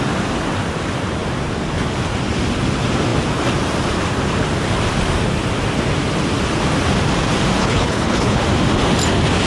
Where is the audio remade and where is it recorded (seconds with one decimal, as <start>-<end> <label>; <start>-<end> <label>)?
0.0-7.6 recorded; 7.6-8.4 remade; 8.4-9.5 recorded